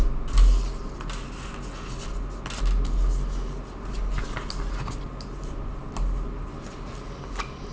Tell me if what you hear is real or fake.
real